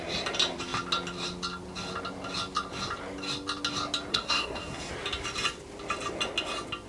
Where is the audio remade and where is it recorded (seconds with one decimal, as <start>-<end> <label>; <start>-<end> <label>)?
0.0-4.1 recorded; 4.1-4.9 remade; 4.9-6.9 recorded